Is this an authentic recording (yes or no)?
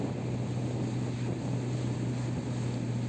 yes